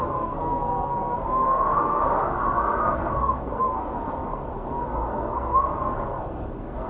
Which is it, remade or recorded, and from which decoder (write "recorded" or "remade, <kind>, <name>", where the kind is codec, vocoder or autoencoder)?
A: remade, codec, SNAC